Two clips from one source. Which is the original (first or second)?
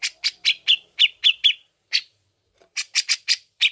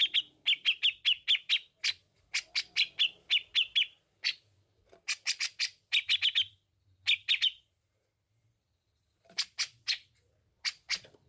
second